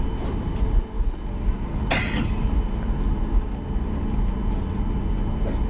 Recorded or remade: recorded